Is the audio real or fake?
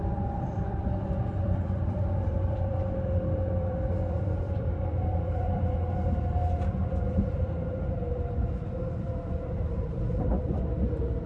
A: fake